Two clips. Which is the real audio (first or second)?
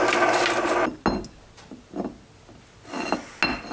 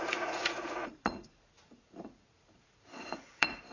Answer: first